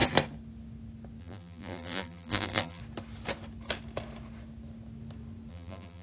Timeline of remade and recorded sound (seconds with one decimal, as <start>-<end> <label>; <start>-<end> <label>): 0.0-1.2 recorded; 1.2-2.8 remade; 2.8-5.5 recorded; 5.5-6.0 remade